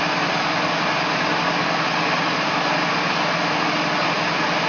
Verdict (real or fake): real